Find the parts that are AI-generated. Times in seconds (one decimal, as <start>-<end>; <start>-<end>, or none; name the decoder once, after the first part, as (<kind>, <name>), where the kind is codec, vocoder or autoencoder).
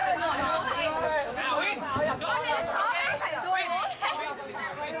0.0-2.1 (autoencoder, DAC-VAE)